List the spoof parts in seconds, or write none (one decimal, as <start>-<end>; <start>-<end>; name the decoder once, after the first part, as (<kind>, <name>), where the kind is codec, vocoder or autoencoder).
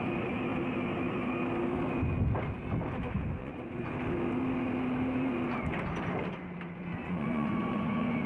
3.4-3.9 (vocoder, Vocos); 7.0-8.3